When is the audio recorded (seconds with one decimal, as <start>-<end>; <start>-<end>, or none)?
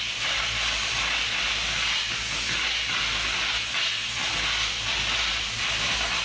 0.0-6.2